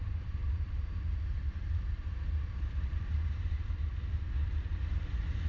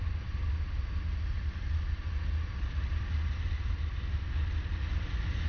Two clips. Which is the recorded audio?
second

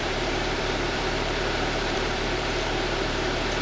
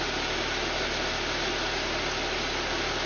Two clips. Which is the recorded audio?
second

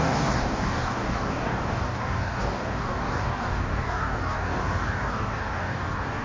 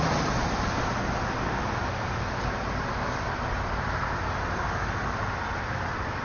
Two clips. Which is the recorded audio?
second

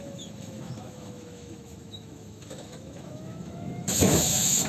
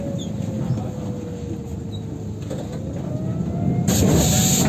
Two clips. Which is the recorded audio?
second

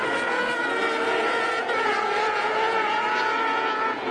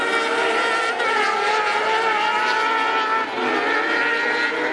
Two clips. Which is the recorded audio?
second